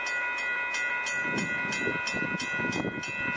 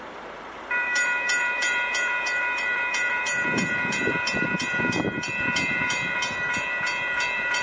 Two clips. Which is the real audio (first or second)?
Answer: first